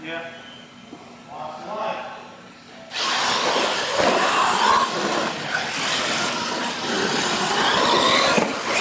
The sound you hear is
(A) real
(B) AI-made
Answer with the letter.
A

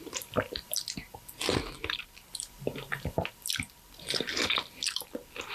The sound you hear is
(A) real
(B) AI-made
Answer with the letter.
A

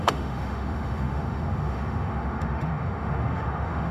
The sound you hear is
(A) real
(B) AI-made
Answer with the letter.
B